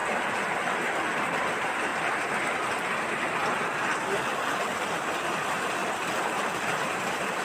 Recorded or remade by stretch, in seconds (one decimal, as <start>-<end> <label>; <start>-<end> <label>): 0.0-1.1 recorded; 1.1-1.9 remade; 1.9-2.8 recorded; 2.8-3.4 remade; 3.4-4.5 recorded; 4.5-7.4 remade